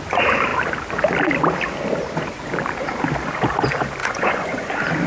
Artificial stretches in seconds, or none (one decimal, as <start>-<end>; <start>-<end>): 4.0-4.6